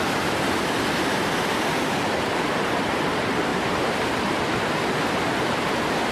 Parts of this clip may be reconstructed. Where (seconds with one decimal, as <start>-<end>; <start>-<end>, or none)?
3.5-4.7

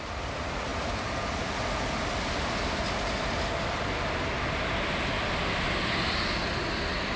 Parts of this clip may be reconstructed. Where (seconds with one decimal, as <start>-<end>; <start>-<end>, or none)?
none

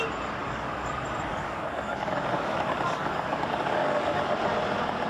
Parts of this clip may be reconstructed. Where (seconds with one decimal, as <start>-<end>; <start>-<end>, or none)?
0.4-0.9; 1.3-4.4

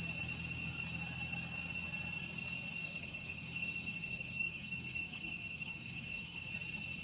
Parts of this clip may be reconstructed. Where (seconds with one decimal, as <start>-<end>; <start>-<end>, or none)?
2.8-6.5

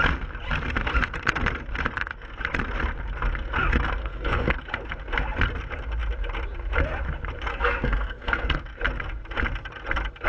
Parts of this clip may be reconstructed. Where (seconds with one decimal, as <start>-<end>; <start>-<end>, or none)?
4.0-4.6; 7.5-8.6